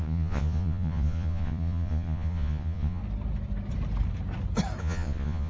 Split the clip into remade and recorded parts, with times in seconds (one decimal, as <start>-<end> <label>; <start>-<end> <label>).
0.0-3.0 remade; 3.0-4.8 recorded; 4.8-5.5 remade